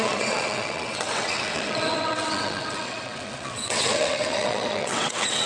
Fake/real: fake